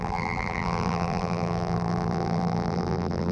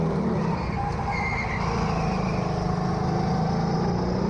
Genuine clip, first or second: second